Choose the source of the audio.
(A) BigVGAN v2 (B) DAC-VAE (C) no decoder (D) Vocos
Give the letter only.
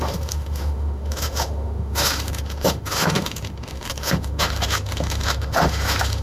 B